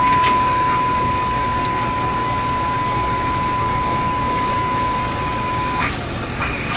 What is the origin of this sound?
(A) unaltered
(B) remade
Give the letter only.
B